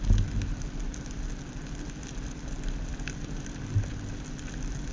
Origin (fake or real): real